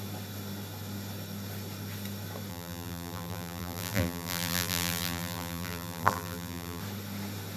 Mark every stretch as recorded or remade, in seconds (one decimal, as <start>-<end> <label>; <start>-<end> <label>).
0.0-2.5 recorded; 2.5-6.8 remade; 6.8-7.6 recorded